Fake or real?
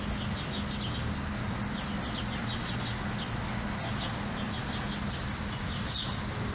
real